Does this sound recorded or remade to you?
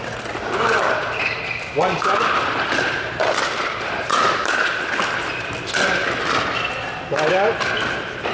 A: recorded